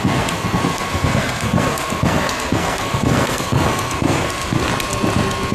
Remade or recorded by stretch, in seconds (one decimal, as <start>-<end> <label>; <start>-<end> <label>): 0.0-4.7 remade; 4.7-5.5 recorded